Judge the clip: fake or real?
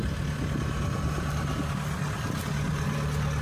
real